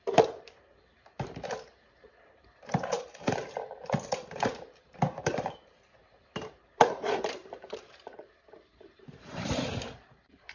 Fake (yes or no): yes